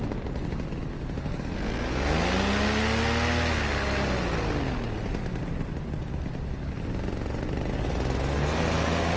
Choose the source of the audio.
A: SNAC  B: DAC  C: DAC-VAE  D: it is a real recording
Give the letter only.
D